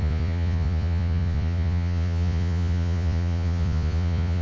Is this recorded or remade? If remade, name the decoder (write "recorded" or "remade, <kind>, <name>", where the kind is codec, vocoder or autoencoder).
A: remade, vocoder, Vocos